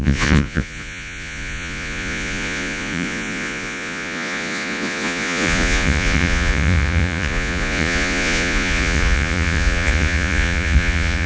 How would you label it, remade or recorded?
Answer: remade